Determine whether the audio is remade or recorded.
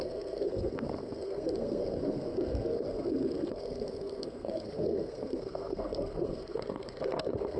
remade